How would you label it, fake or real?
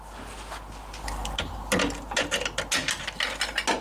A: real